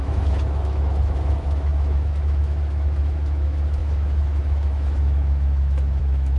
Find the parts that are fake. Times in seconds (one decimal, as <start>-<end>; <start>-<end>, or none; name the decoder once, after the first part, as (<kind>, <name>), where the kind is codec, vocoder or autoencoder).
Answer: 0.0-6.4 (autoencoder, DAC-VAE)